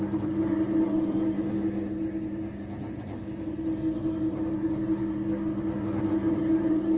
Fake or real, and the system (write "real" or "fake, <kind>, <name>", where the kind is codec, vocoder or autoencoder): real